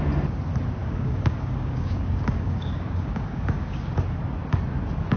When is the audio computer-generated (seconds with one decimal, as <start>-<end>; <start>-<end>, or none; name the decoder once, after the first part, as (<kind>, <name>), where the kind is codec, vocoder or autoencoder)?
0.8-3.9 (codec, DAC)